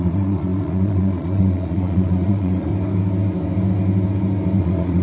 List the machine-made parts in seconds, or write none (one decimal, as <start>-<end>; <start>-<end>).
0.0-2.7; 4.6-5.0